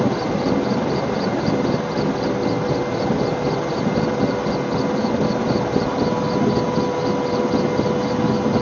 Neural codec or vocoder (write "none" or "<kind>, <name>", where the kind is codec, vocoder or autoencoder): none